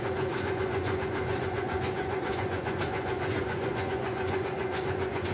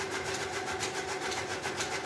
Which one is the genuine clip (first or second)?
second